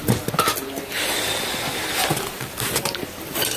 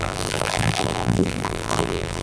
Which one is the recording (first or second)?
first